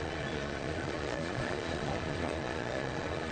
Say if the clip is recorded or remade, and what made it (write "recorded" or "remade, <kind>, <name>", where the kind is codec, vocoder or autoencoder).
remade, vocoder, Vocos